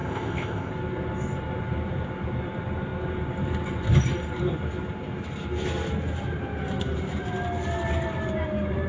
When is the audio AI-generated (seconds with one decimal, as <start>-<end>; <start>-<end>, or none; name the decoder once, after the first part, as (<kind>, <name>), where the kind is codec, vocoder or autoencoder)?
0.0-0.7 (codec, ZipCodec)